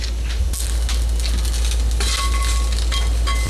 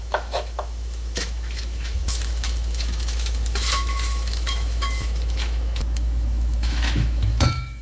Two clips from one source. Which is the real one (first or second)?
first